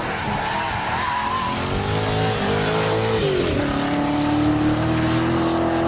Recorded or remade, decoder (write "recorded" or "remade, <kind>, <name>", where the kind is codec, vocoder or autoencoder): recorded